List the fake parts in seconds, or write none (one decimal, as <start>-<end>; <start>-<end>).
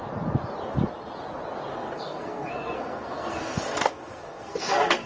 1.7-5.1